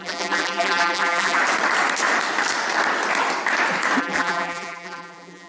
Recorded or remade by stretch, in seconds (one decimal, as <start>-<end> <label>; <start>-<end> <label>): 0.0-1.4 remade; 1.4-4.0 recorded; 4.0-5.5 remade